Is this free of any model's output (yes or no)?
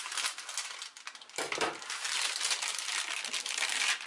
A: yes